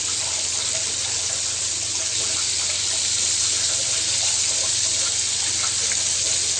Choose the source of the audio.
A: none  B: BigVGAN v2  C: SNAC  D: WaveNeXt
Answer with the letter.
A